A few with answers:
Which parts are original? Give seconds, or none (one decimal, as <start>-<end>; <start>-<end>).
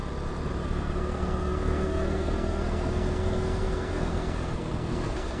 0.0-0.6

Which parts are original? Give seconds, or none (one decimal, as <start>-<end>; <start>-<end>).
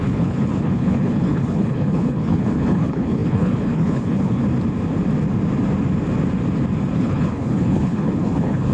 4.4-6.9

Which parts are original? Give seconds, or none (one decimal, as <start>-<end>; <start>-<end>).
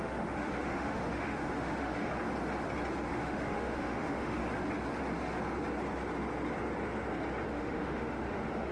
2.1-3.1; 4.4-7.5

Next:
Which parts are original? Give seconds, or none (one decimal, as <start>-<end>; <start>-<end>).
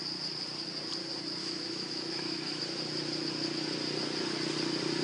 0.0-1.4; 2.6-5.0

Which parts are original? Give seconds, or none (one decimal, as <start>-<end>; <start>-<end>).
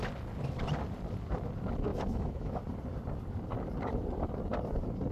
0.0-1.9; 2.6-5.1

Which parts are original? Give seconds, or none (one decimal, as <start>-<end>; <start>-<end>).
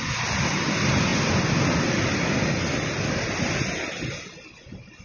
0.0-5.0